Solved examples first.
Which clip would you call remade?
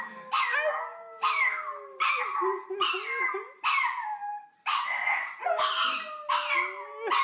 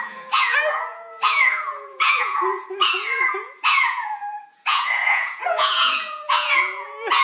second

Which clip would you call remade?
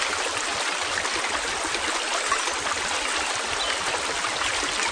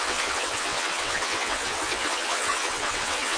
second